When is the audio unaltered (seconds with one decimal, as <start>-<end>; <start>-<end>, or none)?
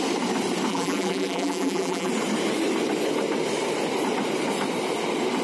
0.0-0.7; 2.1-5.4